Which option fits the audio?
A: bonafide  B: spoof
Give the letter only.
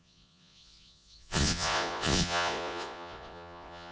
B